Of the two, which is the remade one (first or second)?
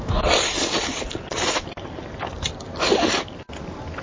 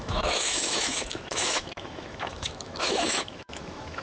second